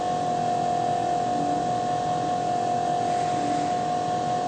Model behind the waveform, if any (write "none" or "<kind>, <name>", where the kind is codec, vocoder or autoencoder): none